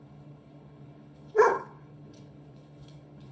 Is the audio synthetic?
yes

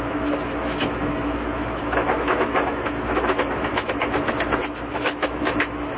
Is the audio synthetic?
yes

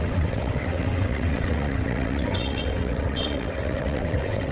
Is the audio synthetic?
yes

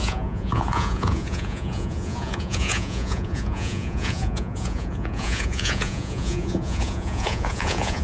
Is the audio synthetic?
yes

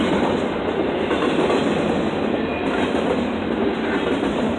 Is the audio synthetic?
no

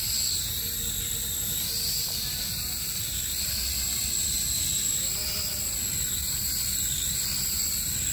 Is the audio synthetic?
no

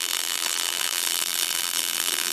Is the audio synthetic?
yes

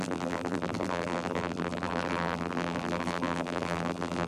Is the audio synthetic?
yes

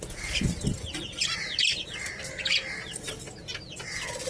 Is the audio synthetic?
no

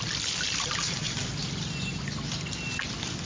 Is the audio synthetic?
no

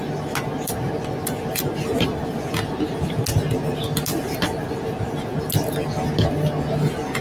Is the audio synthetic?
no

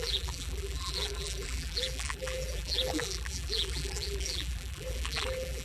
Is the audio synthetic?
yes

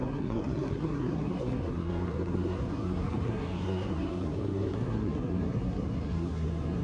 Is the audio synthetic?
yes